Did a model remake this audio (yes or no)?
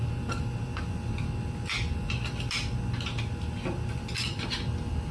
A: no